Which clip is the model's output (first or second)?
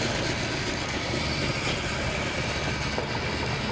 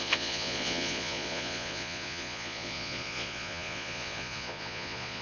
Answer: second